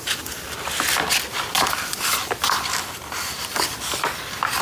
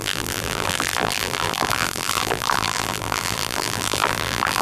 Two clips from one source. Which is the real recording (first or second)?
first